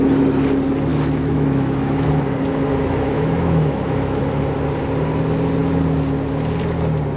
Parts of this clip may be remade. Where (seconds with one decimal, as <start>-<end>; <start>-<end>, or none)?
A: 0.9-2.1; 2.8-4.2